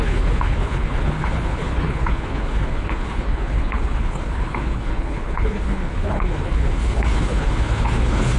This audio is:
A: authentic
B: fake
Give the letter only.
B